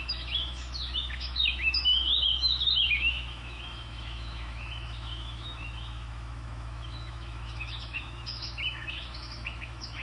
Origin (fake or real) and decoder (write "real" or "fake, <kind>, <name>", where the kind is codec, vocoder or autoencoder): fake, autoencoder, DAC-VAE